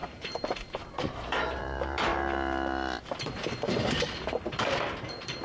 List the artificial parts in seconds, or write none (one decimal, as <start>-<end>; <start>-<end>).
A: 0.0-2.1; 4.4-5.4

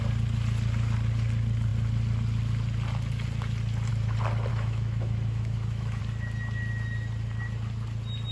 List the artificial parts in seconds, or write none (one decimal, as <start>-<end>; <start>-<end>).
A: 4.5-6.0

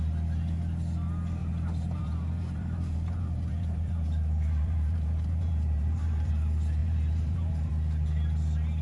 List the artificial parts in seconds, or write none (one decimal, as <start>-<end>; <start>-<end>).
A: 1.4-6.3; 6.8-7.7

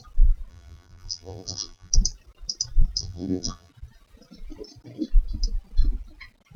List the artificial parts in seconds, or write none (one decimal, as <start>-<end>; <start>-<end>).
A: 0.5-1.9; 3.0-3.7

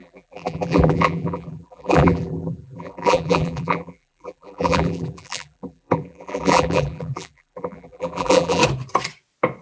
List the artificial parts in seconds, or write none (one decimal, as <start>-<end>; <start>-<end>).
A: 0.0-8.6

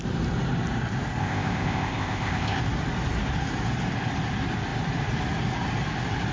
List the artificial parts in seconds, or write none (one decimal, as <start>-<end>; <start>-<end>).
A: 1.2-2.6

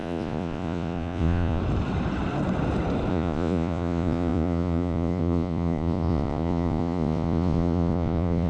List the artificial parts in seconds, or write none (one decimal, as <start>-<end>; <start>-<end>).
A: 0.0-1.6; 3.1-8.5